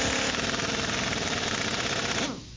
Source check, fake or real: real